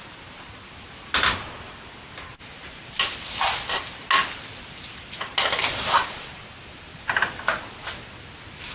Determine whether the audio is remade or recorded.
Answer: recorded